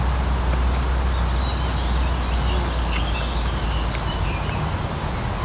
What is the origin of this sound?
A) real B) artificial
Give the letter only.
A